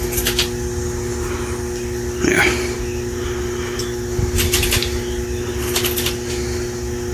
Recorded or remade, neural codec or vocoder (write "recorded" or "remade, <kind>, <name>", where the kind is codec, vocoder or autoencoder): recorded